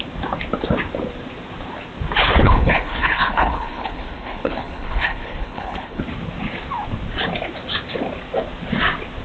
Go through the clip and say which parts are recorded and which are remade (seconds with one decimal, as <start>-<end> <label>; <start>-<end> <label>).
0.0-2.4 recorded; 2.4-6.0 remade; 6.0-9.2 recorded